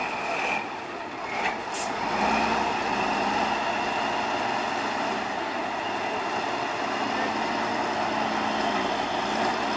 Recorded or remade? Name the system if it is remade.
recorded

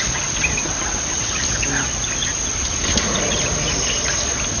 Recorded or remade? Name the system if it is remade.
recorded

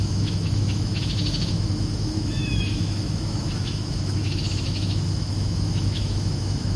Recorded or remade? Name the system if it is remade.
remade, autoencoder, DAC-VAE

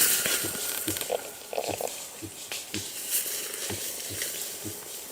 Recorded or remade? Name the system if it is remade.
recorded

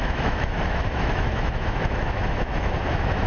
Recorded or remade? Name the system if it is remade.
remade, autoencoder, DAC-VAE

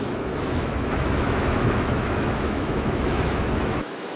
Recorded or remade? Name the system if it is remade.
remade, autoencoder, DAC-VAE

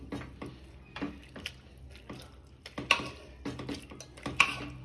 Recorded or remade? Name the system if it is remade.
recorded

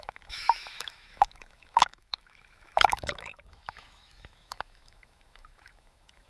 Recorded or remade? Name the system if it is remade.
remade, autoencoder, DAC-VAE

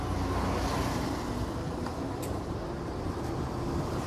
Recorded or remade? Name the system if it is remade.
recorded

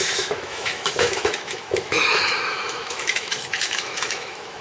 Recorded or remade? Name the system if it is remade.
remade, autoencoder, DAC-VAE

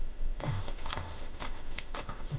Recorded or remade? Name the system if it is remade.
remade, autoencoder, DAC-VAE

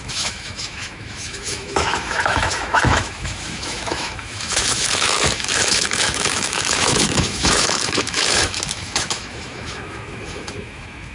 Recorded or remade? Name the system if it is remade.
remade, autoencoder, DAC-VAE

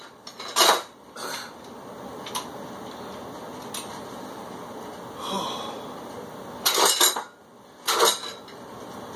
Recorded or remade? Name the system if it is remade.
recorded